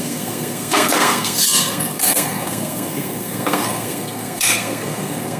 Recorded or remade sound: remade